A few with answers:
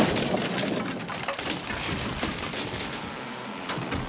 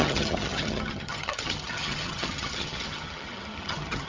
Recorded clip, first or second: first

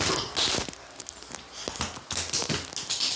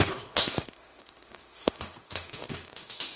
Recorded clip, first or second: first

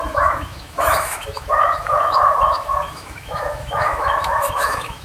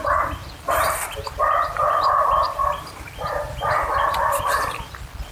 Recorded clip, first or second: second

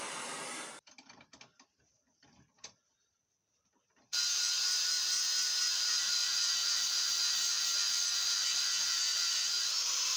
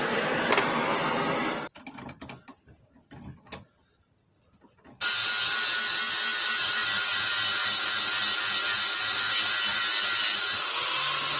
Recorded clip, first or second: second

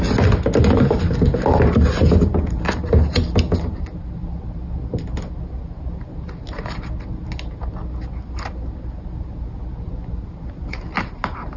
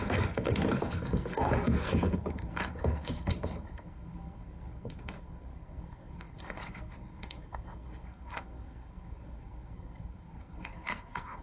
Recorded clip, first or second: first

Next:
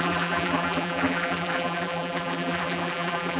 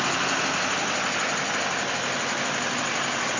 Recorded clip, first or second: second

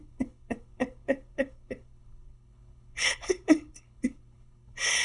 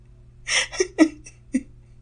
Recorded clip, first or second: second